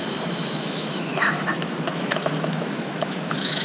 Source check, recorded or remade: remade